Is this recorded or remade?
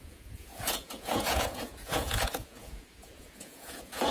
remade